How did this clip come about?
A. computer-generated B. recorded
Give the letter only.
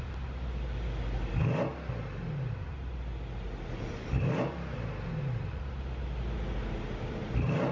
B